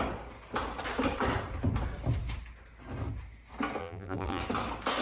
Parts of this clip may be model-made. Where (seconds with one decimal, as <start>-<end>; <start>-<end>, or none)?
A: 3.8-4.4